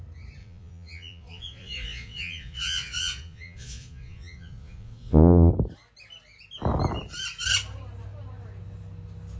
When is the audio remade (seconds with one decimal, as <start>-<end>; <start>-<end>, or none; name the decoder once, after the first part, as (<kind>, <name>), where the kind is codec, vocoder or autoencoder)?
0.4-5.5 (vocoder, Vocos)